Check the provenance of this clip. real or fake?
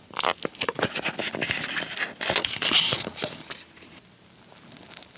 real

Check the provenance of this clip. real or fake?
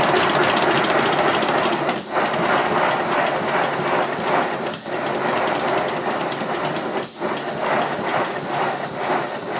real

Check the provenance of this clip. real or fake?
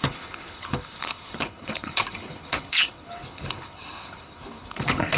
fake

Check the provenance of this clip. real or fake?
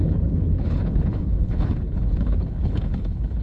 fake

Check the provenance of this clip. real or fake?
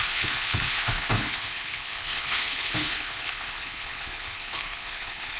fake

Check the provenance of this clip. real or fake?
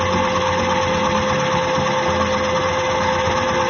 real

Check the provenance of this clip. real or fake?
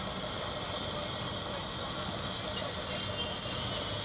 real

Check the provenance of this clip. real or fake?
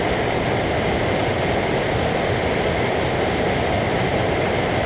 real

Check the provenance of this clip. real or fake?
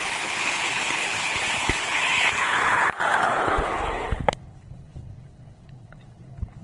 fake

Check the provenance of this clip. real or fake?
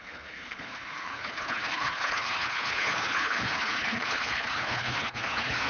fake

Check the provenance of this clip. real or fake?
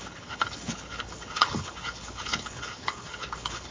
fake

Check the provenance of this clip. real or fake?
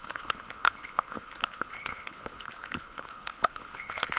fake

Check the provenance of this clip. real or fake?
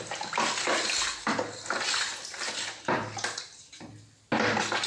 real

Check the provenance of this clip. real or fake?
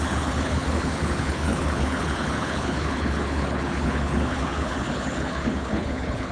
fake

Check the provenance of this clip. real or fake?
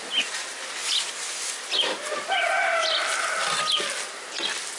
real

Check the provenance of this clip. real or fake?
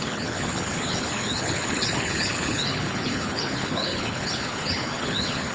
fake